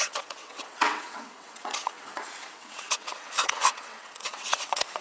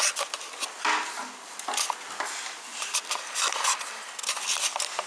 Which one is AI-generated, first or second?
first